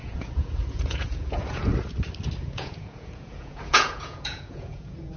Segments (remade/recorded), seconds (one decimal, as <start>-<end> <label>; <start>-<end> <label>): 0.0-1.7 remade; 1.7-2.4 recorded; 2.4-5.2 remade